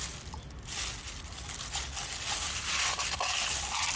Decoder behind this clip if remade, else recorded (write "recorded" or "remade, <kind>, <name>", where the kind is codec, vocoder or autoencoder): recorded